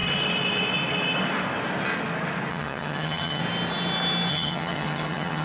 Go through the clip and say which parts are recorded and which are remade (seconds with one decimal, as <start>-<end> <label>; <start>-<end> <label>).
0.0-2.5 recorded; 2.5-3.4 remade; 3.4-4.3 recorded; 4.3-5.4 remade

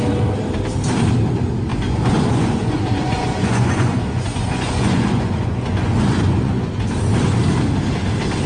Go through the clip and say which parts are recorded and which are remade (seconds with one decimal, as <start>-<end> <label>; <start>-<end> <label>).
0.0-1.7 recorded; 1.7-6.8 remade; 6.8-8.5 recorded